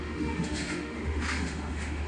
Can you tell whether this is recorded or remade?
remade